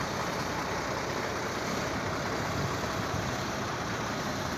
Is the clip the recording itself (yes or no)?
no